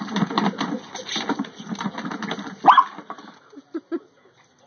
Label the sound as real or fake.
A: real